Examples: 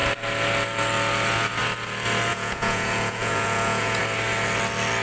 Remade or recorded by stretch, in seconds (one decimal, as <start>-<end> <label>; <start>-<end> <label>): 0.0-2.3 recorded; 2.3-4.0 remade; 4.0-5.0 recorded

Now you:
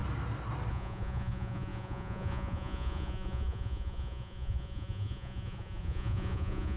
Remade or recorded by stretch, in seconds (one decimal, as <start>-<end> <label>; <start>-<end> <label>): 0.0-0.7 recorded; 0.7-6.8 remade

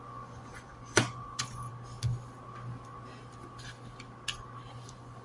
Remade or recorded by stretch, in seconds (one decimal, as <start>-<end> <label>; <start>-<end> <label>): 0.0-1.7 remade; 1.7-4.7 recorded; 4.7-5.2 remade